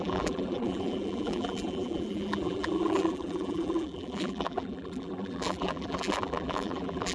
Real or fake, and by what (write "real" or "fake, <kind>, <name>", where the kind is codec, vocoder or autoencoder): fake, vocoder, BigVGAN v2